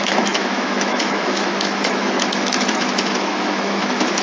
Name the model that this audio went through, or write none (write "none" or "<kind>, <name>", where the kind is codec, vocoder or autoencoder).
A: autoencoder, DAC-VAE